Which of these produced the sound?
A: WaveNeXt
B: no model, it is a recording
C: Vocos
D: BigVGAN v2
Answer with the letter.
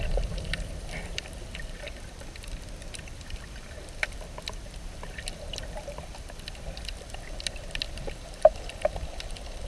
D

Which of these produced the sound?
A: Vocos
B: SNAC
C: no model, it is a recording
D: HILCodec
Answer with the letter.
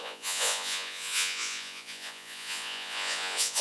A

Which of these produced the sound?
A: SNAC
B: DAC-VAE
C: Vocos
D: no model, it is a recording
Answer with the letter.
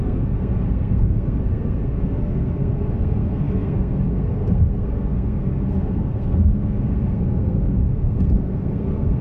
A